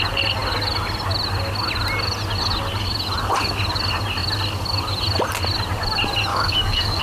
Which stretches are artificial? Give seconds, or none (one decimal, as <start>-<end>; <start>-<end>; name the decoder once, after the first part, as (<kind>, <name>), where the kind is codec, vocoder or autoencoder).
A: 6.3-7.0 (codec, DAC)